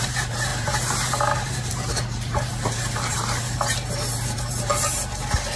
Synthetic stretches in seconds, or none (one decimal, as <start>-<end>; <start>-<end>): 0.0-4.7